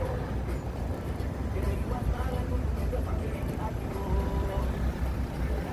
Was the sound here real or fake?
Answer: fake